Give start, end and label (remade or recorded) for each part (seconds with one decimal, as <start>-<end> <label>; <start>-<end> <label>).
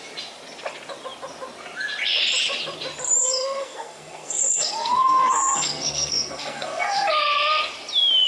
0.0-3.2 recorded; 3.2-7.1 remade; 7.1-8.3 recorded